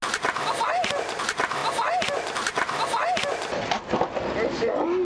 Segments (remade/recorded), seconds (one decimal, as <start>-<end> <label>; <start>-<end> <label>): 0.0-5.0 recorded

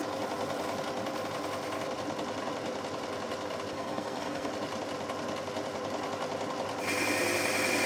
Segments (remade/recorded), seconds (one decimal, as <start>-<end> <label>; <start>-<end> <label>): 0.0-3.7 recorded; 3.7-4.5 remade; 4.5-7.9 recorded